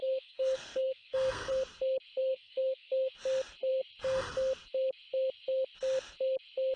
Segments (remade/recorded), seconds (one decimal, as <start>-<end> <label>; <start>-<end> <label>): 0.0-1.5 remade; 1.5-2.2 recorded; 2.2-3.1 remade; 3.1-6.8 recorded